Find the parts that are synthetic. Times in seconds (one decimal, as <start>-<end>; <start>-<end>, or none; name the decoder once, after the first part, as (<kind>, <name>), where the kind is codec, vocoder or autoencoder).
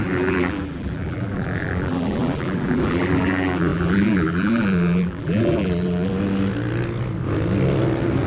0.0-6.1 (vocoder, BigVGAN v2)